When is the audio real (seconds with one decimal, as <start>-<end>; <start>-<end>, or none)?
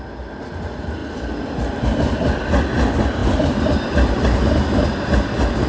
0.0-1.0; 2.0-3.2; 3.8-5.7